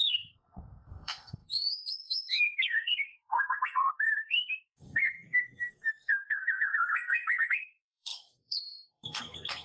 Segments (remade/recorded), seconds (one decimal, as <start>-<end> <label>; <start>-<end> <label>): 0.0-9.6 remade